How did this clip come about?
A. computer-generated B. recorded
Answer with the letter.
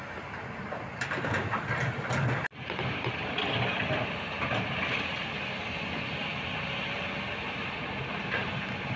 B